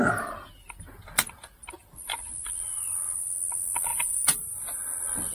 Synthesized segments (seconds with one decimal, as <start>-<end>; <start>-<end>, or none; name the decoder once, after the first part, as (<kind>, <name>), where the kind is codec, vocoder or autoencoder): 3.9-4.8 (vocoder, BigVGAN v2)